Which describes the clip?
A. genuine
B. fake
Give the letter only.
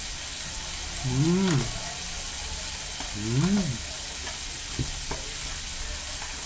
A